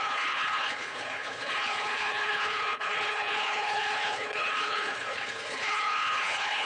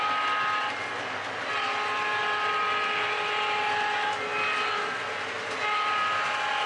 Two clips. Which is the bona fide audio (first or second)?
second